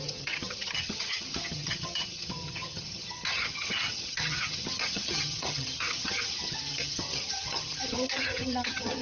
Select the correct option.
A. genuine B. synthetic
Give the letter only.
B